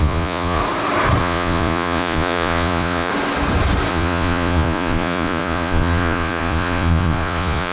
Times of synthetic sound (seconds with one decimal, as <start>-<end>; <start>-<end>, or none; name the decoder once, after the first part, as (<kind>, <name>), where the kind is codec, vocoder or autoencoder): 0.0-0.6 (vocoder, Vocos); 1.2-3.1; 3.9-7.7